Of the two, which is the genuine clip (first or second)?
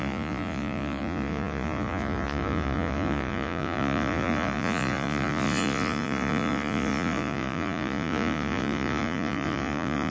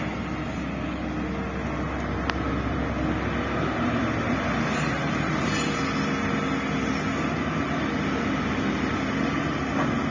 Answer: second